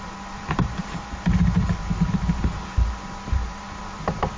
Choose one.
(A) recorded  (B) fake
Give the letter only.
B